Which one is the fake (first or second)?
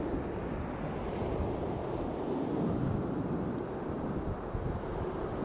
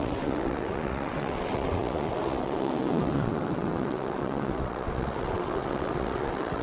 second